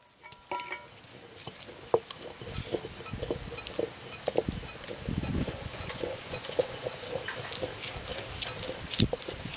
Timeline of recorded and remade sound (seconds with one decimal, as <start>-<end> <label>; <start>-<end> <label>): 0.0-5.2 recorded; 5.2-7.1 remade; 7.1-9.6 recorded